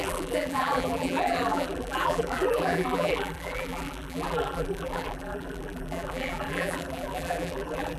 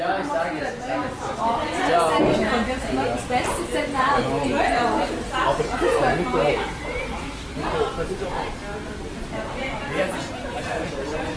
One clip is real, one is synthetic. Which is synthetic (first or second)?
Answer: first